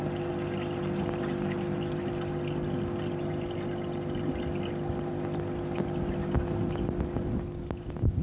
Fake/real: real